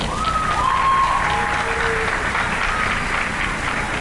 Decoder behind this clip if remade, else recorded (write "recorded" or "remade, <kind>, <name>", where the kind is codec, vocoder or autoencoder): recorded